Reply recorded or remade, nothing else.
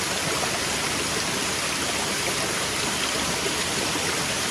recorded